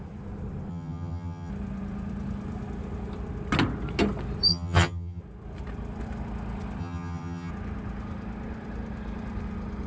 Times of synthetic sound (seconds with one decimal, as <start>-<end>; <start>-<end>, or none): 0.7-1.5; 4.5-5.2; 6.8-7.5